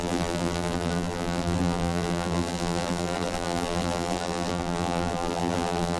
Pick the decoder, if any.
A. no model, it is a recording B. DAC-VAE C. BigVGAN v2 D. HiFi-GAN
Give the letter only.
C